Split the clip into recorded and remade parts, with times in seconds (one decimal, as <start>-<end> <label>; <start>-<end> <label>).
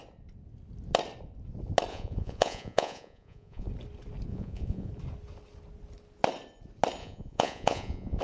0.0-1.9 recorded; 1.9-3.7 remade; 3.7-4.3 recorded; 4.3-4.9 remade; 4.9-7.0 recorded; 7.0-8.2 remade